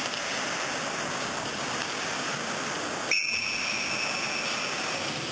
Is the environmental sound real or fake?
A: real